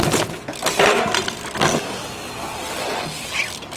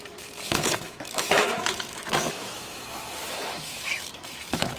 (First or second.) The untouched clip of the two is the first